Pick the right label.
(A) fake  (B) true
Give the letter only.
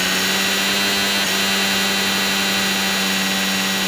B